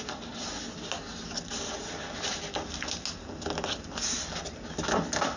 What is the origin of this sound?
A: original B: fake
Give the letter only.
A